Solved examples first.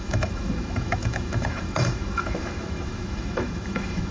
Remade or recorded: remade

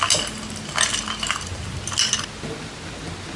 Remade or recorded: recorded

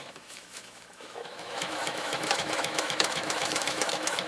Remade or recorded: remade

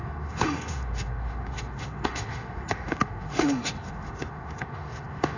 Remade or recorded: remade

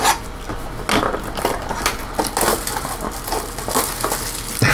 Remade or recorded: recorded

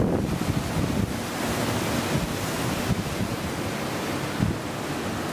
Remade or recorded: recorded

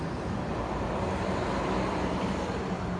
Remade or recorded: recorded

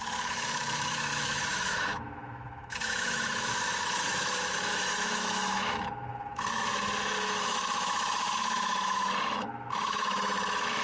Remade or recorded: remade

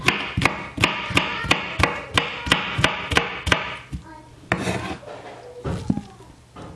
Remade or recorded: recorded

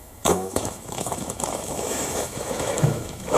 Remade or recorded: remade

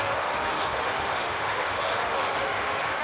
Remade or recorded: remade